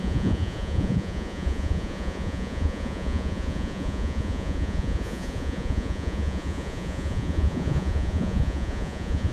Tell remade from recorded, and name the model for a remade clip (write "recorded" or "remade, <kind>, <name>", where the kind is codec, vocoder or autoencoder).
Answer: remade, vocoder, Vocos